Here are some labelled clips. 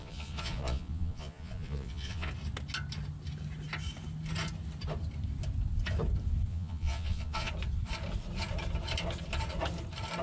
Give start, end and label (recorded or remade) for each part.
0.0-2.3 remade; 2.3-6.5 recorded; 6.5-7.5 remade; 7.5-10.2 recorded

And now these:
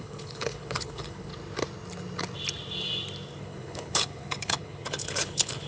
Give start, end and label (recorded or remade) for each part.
0.0-1.3 remade; 1.3-3.4 recorded; 3.4-5.7 remade

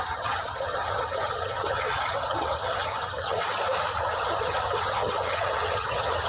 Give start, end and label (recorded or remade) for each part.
0.0-3.4 remade; 3.4-4.0 recorded; 4.0-6.3 remade

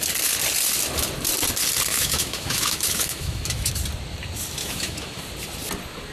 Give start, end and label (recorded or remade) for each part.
0.0-1.9 recorded; 1.9-3.7 remade; 3.7-4.6 recorded; 4.6-5.2 remade; 5.2-6.1 recorded

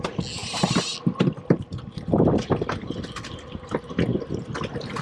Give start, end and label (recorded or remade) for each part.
0.0-5.0 recorded